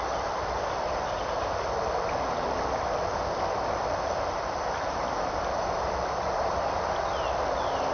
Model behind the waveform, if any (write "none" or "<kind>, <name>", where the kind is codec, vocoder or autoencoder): none